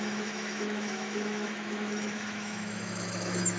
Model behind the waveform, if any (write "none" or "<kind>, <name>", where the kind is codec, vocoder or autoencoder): autoencoder, DAC-VAE